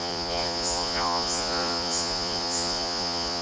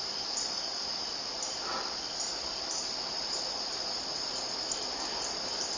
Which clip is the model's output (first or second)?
first